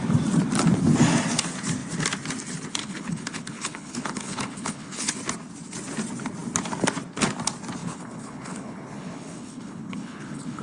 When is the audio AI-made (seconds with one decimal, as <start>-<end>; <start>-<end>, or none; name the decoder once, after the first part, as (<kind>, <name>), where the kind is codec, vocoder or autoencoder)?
2.8-5.1 (codec, HILCodec); 7.8-10.6